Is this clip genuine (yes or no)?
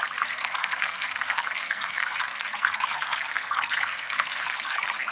no